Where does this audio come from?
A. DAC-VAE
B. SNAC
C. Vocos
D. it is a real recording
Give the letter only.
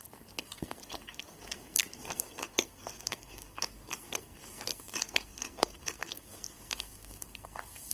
B